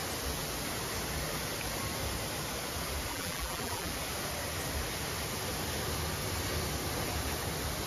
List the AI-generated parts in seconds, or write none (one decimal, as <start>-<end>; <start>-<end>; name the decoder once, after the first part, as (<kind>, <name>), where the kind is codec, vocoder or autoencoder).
3.1-3.9 (vocoder, BigVGAN v2)